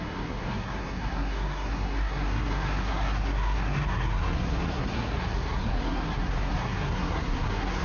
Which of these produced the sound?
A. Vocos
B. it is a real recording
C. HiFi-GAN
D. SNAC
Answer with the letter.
D